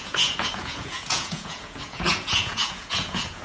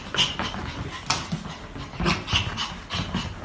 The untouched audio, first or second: second